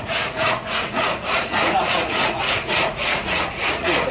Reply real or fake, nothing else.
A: fake